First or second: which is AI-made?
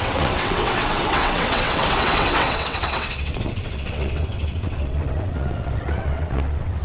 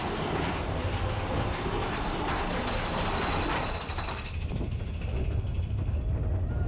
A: first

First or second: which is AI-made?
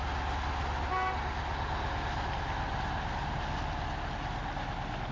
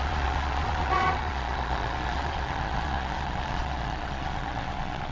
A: second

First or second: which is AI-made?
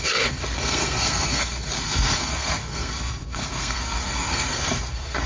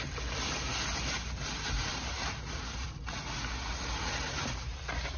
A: first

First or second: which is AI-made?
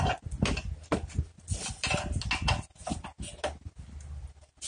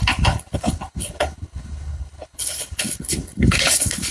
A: second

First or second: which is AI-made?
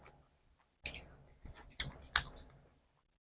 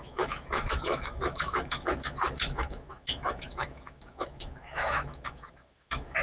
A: second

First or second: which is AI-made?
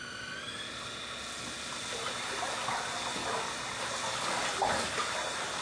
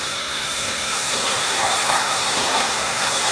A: second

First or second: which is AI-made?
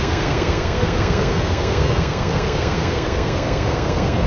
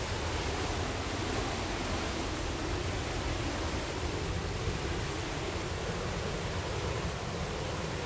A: first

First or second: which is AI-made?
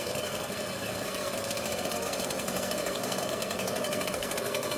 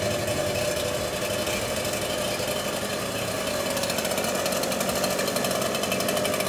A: first